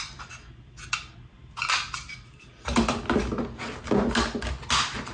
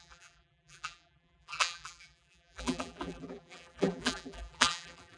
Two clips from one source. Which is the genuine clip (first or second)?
first